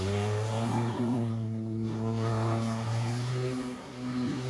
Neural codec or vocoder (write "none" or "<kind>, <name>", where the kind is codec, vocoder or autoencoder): codec, SNAC